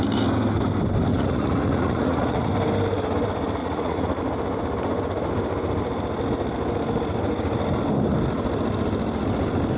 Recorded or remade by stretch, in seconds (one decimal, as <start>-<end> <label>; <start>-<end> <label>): 0.0-1.1 recorded; 1.1-2.5 remade; 2.5-3.6 recorded; 3.6-4.2 remade; 4.2-9.8 recorded